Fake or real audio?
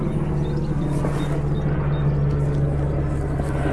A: real